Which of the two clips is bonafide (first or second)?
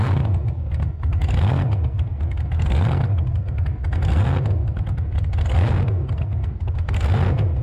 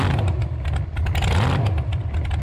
second